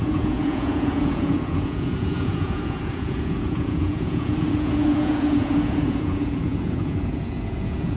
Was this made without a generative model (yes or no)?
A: no